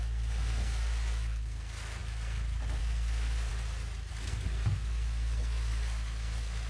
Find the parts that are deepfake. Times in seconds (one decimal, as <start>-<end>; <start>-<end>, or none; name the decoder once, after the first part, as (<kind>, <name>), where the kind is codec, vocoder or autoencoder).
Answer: 0.0-3.5 (codec, SNAC); 4.1-6.7